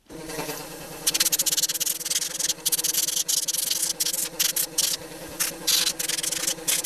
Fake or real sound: real